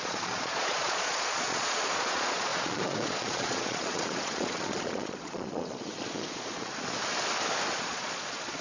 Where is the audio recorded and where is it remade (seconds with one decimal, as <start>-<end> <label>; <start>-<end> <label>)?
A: 0.0-6.7 remade; 6.7-7.8 recorded; 7.8-8.6 remade